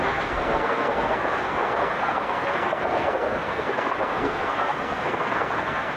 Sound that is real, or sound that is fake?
fake